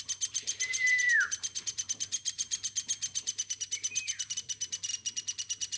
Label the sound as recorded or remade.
remade